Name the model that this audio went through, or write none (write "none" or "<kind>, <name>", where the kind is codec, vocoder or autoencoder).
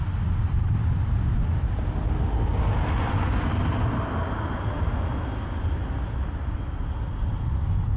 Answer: none